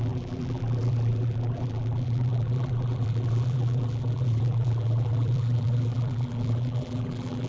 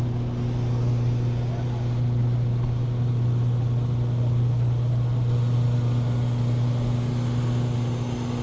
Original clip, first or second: second